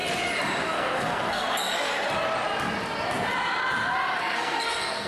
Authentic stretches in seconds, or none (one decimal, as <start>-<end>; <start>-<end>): 0.0-0.6; 1.9-4.2